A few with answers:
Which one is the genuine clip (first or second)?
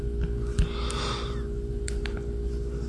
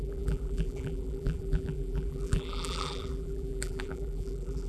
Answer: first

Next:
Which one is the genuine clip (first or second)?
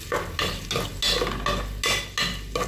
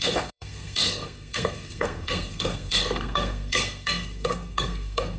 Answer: first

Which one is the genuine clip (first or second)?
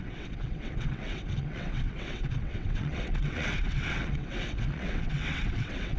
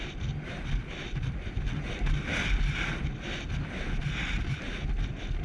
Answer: second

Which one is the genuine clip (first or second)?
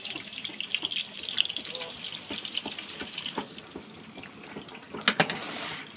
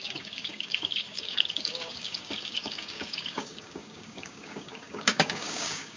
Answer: first